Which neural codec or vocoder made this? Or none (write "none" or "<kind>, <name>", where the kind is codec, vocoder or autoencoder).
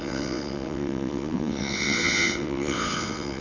vocoder, WaveNeXt